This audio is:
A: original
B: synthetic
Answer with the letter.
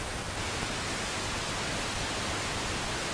A